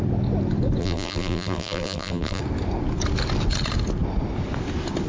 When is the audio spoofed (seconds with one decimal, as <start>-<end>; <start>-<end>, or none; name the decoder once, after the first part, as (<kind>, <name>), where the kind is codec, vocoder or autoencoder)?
0.8-2.4 (vocoder, BigVGAN v2)